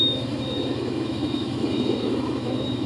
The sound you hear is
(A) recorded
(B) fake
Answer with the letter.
B